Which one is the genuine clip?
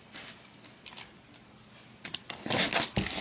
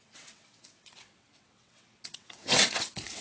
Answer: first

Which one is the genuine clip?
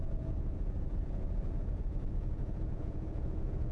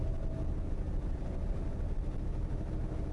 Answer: second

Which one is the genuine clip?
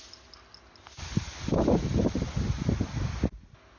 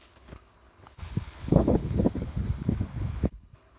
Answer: first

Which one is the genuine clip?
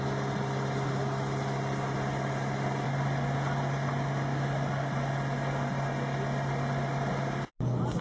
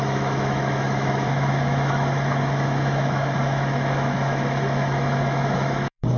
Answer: first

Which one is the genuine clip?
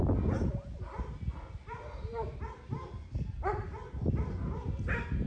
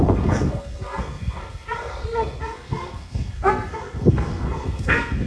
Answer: first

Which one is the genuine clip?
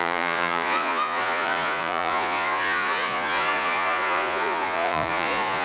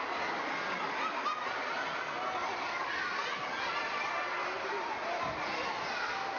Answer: second